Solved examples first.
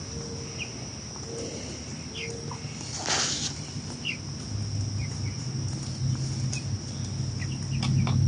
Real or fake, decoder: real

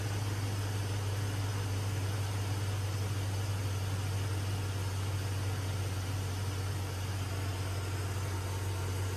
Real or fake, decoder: real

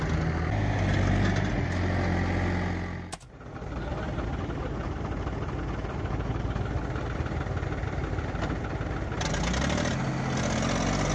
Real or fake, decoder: real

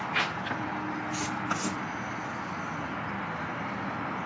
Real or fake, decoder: real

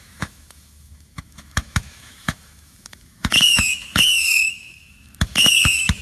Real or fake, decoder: fake, autoencoder, DAC-VAE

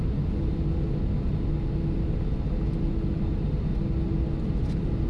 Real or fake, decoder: real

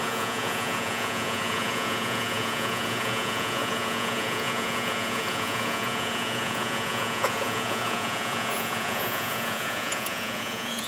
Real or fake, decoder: fake, vocoder, Vocos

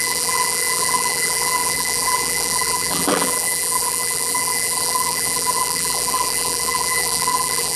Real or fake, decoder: fake, vocoder, BigVGAN v2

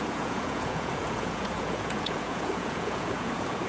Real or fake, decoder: fake, vocoder, Vocos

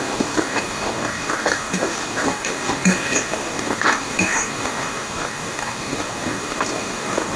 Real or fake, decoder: fake, codec, DAC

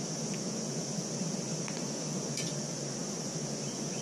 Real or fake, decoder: fake, vocoder, Vocos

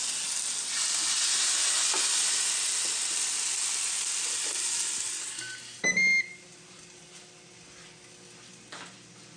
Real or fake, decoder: real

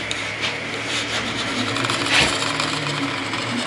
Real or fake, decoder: fake, vocoder, BigVGAN v2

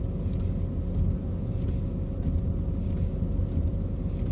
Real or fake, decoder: real